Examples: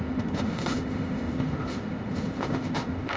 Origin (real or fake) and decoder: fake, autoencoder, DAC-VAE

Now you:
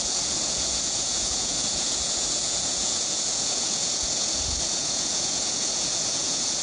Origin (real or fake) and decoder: fake, vocoder, Vocos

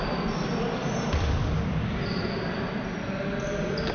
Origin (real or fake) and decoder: real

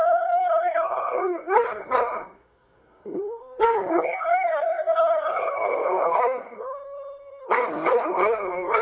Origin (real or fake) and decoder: fake, codec, SNAC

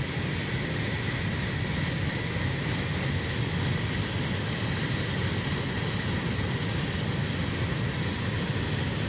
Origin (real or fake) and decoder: real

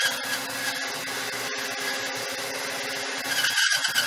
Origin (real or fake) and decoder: real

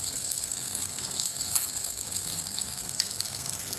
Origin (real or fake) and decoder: fake, codec, SNAC